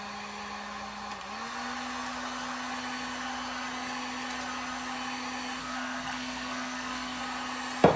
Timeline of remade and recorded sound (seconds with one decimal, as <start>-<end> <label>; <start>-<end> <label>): 0.0-5.6 recorded; 5.6-7.2 remade; 7.2-8.0 recorded

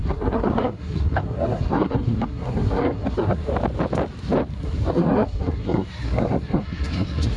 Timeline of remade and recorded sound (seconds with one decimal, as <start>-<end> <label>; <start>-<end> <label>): 0.0-3.5 remade; 3.5-4.5 recorded; 4.5-7.4 remade

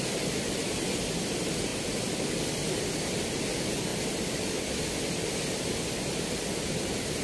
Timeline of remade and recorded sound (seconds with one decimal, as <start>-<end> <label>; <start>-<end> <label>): 0.0-7.2 recorded

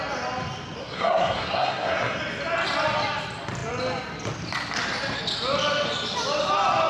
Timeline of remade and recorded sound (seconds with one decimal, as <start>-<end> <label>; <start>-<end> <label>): 0.0-0.8 recorded; 0.8-2.2 remade; 2.2-6.9 recorded